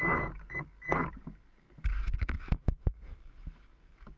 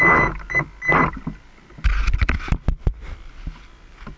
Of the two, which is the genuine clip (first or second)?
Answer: second